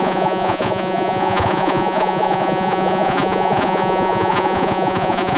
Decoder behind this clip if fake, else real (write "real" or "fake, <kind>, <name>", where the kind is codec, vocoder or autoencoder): fake, vocoder, Vocos